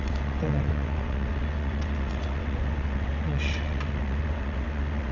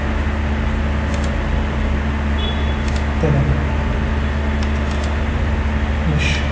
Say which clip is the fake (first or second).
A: first